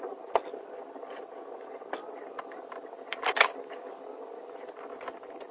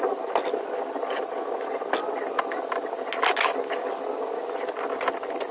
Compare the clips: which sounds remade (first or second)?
first